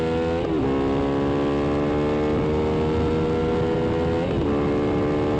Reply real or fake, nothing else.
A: real